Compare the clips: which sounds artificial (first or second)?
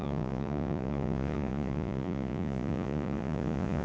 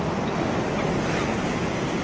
first